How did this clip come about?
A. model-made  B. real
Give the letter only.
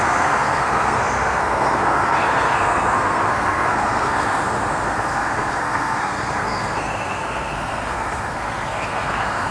A